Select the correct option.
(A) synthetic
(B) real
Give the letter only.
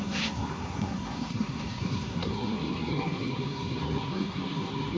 A